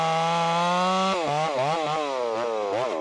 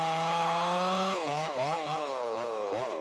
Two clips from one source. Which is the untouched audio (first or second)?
first